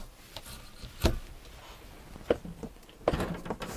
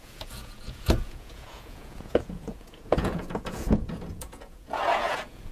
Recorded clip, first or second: first